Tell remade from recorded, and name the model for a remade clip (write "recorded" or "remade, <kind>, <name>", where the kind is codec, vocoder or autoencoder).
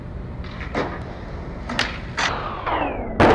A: recorded